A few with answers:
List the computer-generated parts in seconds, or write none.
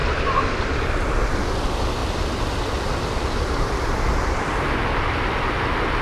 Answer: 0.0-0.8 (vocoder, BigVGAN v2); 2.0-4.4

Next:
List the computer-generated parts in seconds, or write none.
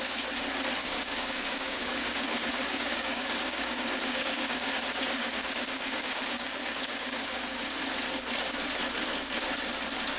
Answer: 0.8-4.8 (codec, DAC); 5.2-7.6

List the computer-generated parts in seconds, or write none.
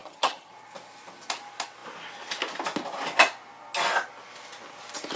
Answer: 0.0-0.5 (vocoder, HiFi-GAN)